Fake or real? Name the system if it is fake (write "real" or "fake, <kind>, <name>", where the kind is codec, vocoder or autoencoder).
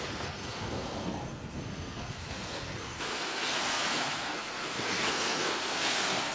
fake, codec, SNAC